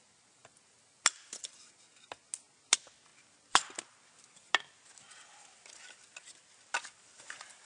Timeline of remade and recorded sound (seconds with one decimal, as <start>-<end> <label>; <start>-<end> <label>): 0.0-7.7 recorded